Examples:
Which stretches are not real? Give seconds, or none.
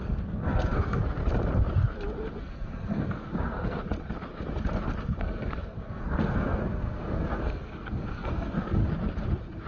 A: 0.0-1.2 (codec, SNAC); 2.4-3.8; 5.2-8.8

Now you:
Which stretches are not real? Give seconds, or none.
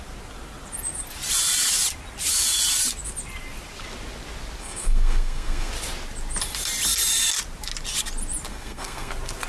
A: 4.6-5.7 (codec, SNAC); 8.5-9.1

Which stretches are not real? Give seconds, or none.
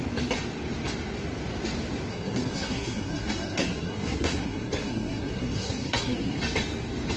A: 2.1-6.4 (codec, SNAC)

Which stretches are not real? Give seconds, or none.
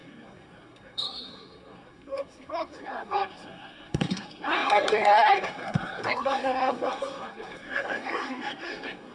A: 0.0-9.1 (codec, SNAC)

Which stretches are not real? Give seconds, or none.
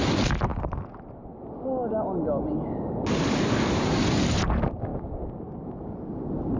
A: none